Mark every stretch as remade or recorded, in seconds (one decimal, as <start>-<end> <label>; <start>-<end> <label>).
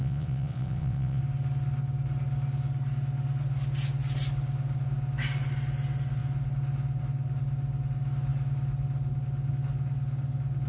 0.0-1.2 remade; 1.2-10.7 recorded